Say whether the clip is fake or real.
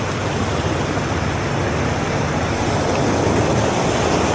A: real